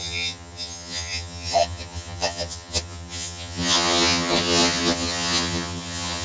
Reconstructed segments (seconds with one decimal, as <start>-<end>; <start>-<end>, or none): 0.0-6.2